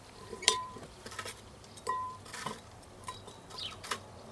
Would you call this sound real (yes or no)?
no